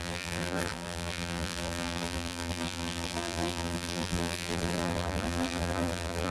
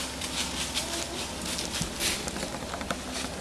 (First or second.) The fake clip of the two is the first